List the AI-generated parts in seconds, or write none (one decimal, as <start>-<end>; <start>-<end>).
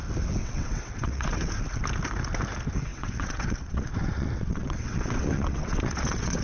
0.4-1.5; 2.9-6.4